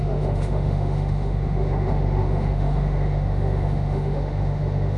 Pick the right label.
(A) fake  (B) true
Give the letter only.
A